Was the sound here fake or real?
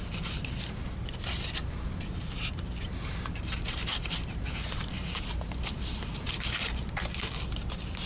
fake